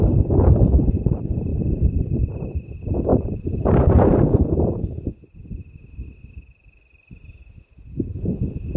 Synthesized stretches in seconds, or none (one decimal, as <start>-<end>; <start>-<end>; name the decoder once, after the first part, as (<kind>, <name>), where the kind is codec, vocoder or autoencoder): 1.5-2.5 (vocoder, BigVGAN v2); 3.1-3.9